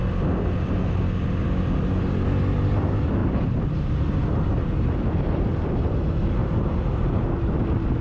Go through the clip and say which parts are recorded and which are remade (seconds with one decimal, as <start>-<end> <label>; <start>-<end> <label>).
0.0-3.2 recorded; 3.2-5.5 remade; 5.5-6.4 recorded; 6.4-7.1 remade; 7.1-8.0 recorded